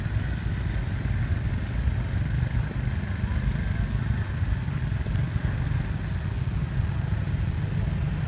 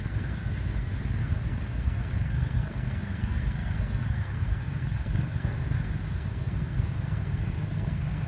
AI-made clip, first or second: second